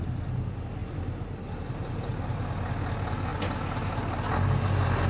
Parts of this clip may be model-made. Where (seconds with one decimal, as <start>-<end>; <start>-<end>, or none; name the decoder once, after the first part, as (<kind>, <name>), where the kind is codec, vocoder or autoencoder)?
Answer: none